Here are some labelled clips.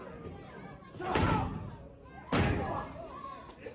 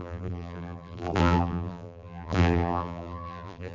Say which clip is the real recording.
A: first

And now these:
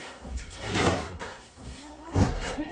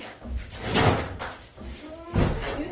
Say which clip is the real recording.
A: second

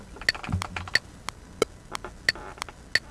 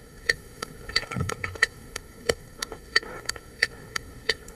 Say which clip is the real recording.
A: first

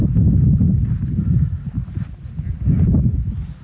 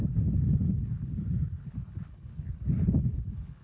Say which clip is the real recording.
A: first